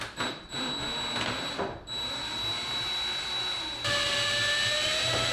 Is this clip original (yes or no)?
yes